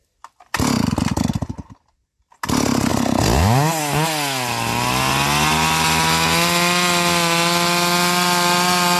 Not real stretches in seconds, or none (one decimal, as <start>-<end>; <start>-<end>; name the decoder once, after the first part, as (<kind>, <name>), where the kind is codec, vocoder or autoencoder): none